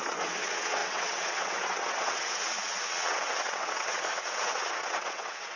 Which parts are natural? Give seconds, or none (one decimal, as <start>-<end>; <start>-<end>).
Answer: none